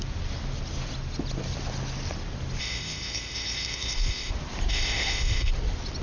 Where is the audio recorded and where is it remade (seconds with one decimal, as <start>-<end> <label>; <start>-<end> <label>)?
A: 0.0-2.6 recorded; 2.6-4.3 remade; 4.3-4.7 recorded; 4.7-5.5 remade; 5.5-6.0 recorded